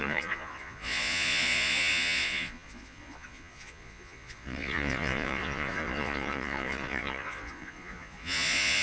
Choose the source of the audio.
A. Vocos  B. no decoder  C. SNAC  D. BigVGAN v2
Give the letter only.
A